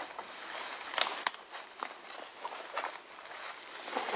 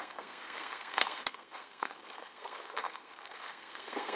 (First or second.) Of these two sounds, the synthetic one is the second